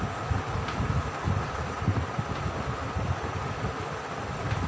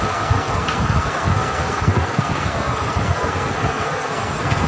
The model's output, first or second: second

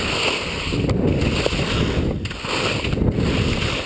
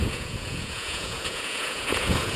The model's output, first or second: second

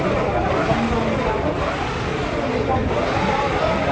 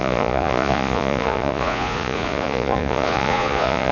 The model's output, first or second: second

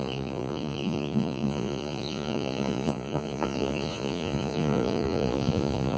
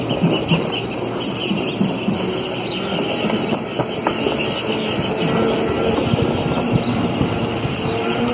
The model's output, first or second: first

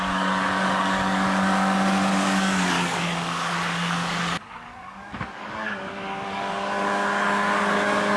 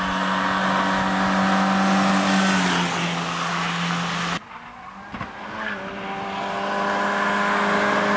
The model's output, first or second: first